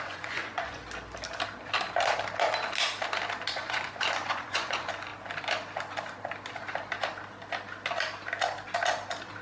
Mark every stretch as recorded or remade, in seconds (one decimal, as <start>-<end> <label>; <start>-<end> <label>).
0.0-0.8 remade; 0.8-3.5 recorded; 3.5-5.1 remade; 5.1-9.4 recorded